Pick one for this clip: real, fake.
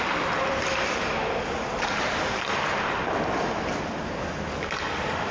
real